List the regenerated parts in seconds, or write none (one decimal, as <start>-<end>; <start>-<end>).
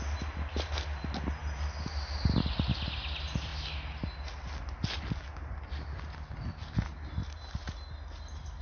none